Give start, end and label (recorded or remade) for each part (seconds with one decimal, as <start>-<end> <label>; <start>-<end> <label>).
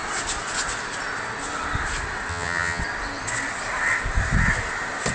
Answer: 0.0-2.3 recorded; 2.3-2.8 remade; 2.8-5.1 recorded